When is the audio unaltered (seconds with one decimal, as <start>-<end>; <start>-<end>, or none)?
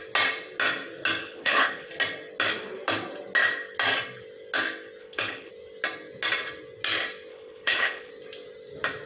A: 0.0-1.2; 1.9-5.0; 5.5-7.3; 8.1-9.1